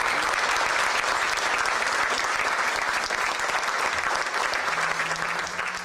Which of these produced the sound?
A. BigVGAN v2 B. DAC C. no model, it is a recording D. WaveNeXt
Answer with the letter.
C